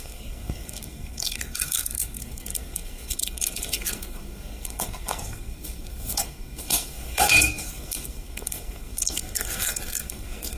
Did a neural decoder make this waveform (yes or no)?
yes